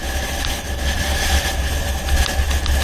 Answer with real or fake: real